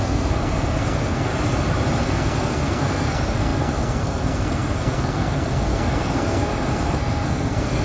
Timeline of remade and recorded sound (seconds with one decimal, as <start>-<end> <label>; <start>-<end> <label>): 0.0-1.3 remade; 1.3-2.0 recorded; 2.0-7.8 remade